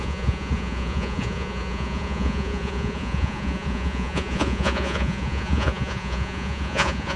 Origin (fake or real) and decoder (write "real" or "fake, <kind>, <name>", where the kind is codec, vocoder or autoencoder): fake, vocoder, Vocos